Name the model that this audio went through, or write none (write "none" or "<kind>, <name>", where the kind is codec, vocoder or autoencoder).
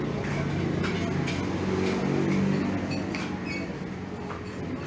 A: none